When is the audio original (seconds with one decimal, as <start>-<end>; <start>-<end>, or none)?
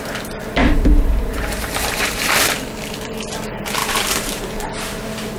0.0-0.6; 2.3-3.8; 4.9-5.4